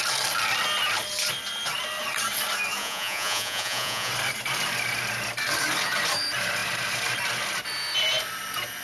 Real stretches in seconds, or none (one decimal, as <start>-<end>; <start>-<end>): 0.0-2.8; 4.1-8.8